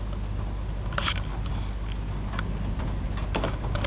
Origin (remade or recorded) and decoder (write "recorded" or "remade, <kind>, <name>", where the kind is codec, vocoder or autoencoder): recorded